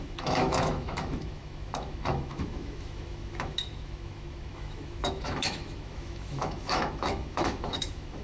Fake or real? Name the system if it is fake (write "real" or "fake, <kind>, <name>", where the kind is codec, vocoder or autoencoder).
fake, autoencoder, DAC-VAE